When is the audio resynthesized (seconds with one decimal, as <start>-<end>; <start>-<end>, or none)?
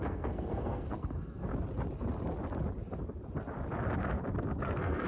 0.0-1.5; 4.6-5.1